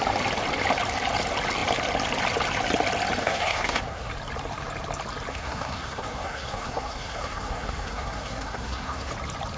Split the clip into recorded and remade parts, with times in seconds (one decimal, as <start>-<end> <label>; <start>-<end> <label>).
0.0-3.2 recorded; 3.2-4.1 remade; 4.1-5.3 recorded; 5.3-9.1 remade; 9.1-9.6 recorded